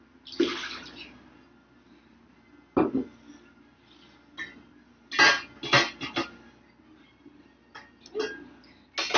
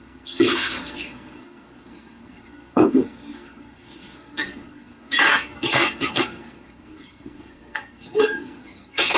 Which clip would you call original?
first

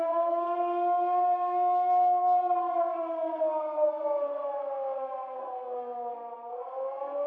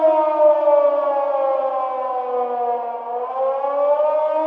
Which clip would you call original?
second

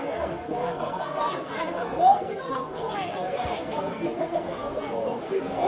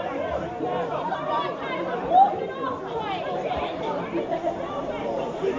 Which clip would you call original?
second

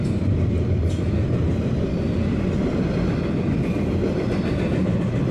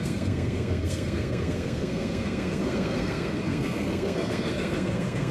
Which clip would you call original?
first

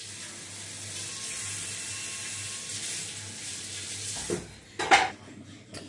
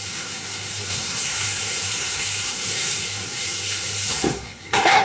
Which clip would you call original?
first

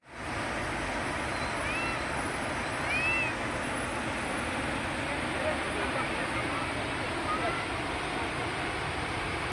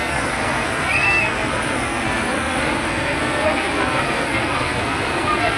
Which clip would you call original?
first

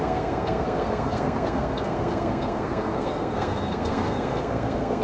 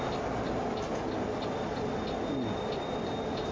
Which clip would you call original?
second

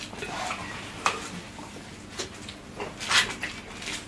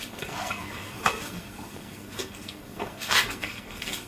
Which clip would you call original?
first